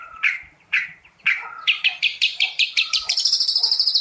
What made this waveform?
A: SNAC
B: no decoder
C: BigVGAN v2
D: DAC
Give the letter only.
C